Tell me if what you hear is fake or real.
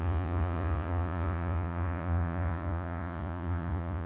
fake